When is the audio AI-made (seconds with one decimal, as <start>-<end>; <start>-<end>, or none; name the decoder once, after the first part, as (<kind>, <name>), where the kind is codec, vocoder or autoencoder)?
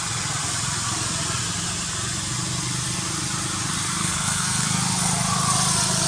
4.0-4.8 (codec, SNAC)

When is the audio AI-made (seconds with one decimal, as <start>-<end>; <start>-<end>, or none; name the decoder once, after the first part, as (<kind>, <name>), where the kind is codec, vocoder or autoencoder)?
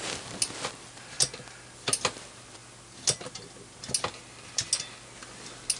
none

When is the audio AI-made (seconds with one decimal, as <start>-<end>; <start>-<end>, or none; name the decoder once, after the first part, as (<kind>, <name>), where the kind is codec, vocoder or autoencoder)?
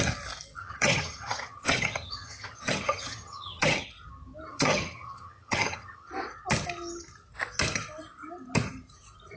0.6-3.8 (vocoder, HiFi-GAN); 4.5-6.1